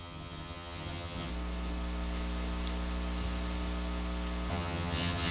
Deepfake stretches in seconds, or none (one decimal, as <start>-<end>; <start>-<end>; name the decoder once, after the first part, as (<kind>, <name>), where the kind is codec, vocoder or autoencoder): 0.0-1.3 (vocoder, HiFi-GAN); 4.5-5.3